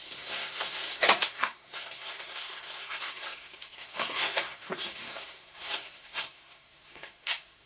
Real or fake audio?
fake